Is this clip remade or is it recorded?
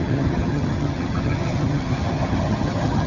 remade